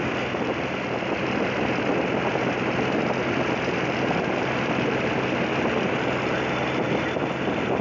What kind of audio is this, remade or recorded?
recorded